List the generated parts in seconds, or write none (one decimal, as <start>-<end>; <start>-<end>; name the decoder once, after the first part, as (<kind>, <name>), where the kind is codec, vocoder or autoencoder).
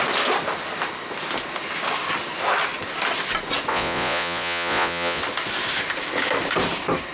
3.7-5.2 (vocoder, Vocos)